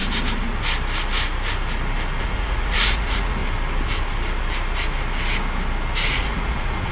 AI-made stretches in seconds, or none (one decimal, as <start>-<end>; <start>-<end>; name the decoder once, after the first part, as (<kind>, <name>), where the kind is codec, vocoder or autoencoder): 2.2-3.4 (vocoder, Vocos); 6.1-6.9